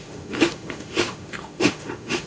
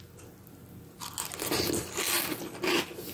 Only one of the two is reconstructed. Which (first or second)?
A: first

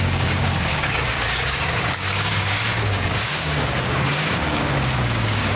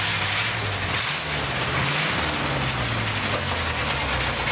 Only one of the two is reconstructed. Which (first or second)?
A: first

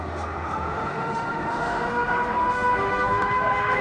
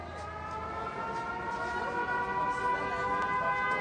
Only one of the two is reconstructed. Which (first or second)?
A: first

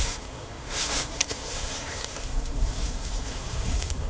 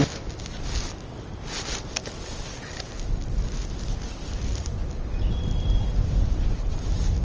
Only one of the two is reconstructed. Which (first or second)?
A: first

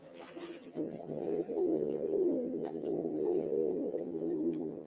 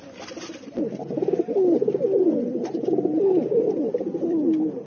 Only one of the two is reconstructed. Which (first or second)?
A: first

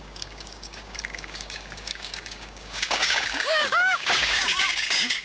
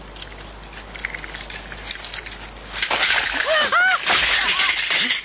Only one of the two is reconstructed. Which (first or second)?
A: first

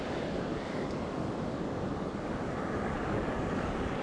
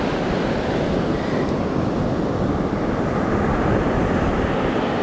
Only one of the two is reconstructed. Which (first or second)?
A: first